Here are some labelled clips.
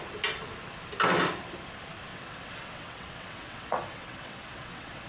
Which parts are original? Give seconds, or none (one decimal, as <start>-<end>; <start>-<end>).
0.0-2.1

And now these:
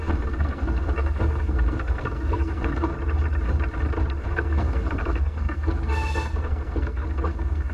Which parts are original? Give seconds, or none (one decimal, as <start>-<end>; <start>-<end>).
2.9-4.2

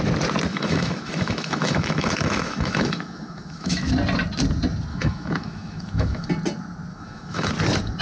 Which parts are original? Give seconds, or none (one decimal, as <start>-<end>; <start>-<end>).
0.0-0.5; 3.9-4.9; 6.3-6.9; 7.5-8.0